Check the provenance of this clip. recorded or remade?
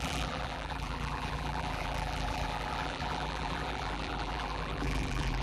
remade